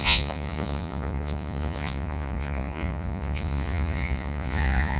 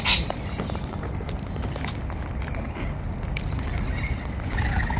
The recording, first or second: second